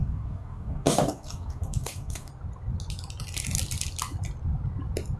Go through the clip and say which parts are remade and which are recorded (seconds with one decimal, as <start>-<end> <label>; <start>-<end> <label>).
0.0-2.3 remade; 2.3-5.2 recorded